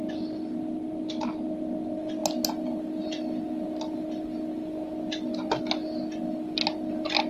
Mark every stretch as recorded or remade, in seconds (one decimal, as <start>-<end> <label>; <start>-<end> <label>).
0.0-7.3 recorded